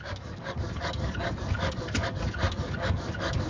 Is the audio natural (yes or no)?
no